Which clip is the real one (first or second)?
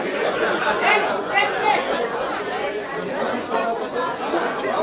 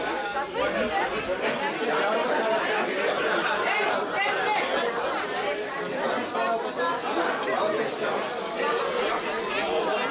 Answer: second